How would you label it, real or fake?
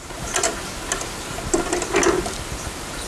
real